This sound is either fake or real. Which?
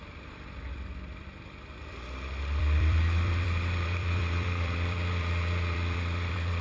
fake